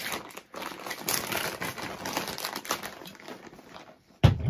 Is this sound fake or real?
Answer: real